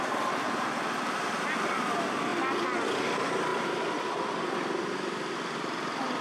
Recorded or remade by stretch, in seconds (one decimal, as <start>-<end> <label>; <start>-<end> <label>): 0.0-3.5 remade; 3.5-5.4 recorded; 5.4-6.2 remade